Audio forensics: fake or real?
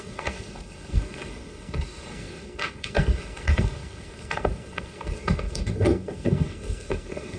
fake